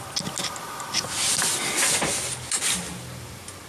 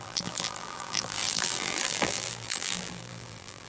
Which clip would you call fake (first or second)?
second